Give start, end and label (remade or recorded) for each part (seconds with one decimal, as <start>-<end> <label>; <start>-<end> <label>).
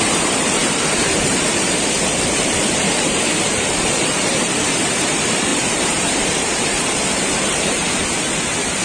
0.0-8.0 remade; 8.0-8.8 recorded